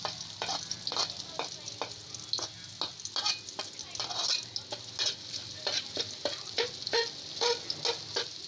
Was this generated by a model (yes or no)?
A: no